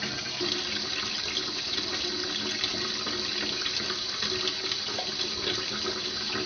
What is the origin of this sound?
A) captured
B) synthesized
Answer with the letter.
A